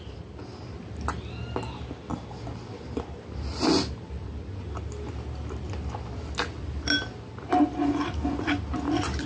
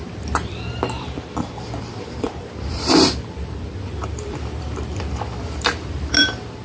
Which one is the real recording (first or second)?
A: first